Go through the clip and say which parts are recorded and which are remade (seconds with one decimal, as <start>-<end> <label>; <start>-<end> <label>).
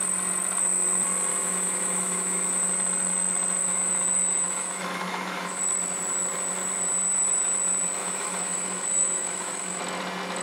0.0-1.3 recorded; 1.3-2.7 remade; 2.7-3.6 recorded; 3.6-5.6 remade; 5.6-8.0 recorded; 8.0-9.8 remade; 9.8-10.4 recorded